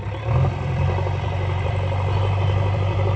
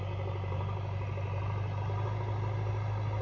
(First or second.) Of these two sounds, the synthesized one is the first